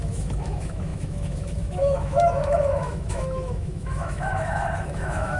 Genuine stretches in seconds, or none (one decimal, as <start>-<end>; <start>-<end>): none